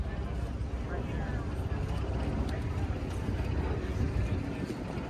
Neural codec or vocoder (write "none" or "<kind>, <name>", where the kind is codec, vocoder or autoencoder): none